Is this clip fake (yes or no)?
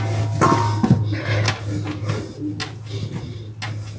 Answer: no